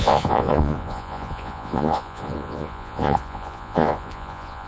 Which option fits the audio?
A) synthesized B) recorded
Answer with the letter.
A